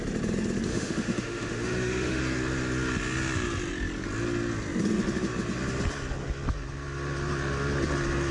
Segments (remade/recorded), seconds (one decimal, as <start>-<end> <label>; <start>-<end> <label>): 0.0-0.7 recorded; 0.7-2.2 remade; 2.2-8.3 recorded